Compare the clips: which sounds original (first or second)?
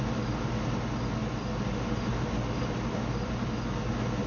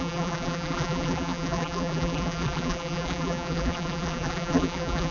first